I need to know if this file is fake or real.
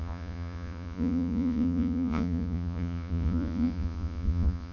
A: fake